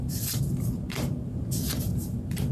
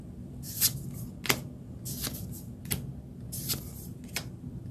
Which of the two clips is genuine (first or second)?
second